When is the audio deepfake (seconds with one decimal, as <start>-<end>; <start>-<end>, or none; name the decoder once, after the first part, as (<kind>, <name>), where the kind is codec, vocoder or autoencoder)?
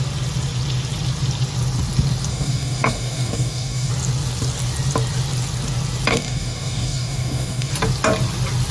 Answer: 2.3-3.9 (codec, DAC); 6.1-7.7